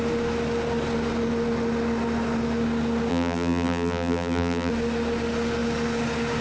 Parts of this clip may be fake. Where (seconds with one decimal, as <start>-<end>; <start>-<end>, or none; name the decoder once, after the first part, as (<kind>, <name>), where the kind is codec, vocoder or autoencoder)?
3.1-4.7 (vocoder, BigVGAN v2)